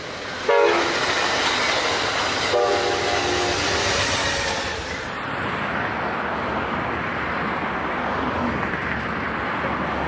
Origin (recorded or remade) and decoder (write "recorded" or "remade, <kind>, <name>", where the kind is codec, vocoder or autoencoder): recorded